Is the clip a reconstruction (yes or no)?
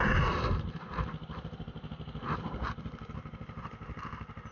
no